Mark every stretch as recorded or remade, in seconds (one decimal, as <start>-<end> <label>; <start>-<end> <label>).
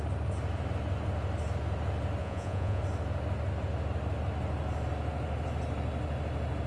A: 0.0-2.2 recorded; 2.2-2.8 remade; 2.8-6.7 recorded